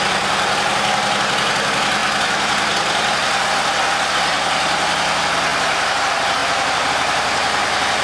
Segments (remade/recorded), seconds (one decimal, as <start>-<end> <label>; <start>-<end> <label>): 0.0-5.5 recorded; 5.5-6.0 remade; 6.0-6.4 recorded; 6.4-6.9 remade; 6.9-8.0 recorded